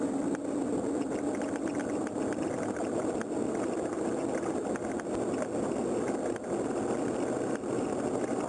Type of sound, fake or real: real